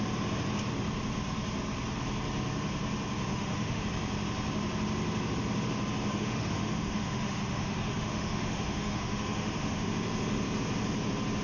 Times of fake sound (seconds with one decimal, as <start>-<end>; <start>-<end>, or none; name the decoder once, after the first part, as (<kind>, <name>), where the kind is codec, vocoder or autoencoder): 3.3-3.8 (autoencoder, DAC-VAE); 6.1-9.9